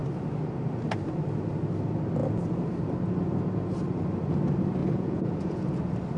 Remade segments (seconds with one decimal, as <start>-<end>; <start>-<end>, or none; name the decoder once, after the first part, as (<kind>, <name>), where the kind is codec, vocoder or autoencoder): 4.8-5.8 (vocoder, Vocos)